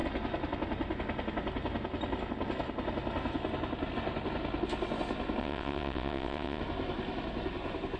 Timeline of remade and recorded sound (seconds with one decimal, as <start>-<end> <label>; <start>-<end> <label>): 0.0-5.4 recorded; 5.4-6.6 remade; 6.6-8.0 recorded